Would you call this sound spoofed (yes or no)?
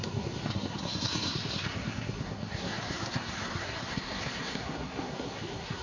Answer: yes